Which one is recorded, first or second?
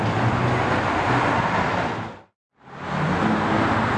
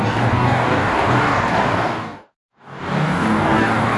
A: first